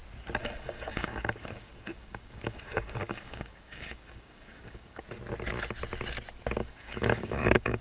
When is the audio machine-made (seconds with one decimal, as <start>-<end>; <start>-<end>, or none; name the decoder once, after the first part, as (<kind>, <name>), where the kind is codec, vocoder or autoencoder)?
0.4-5.0 (codec, DAC); 6.6-7.8